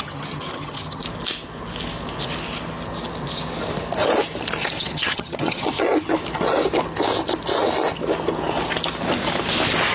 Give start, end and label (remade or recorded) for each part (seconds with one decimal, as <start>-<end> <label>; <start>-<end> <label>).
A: 0.0-1.0 remade; 1.0-4.8 recorded; 4.8-6.1 remade; 6.1-9.9 recorded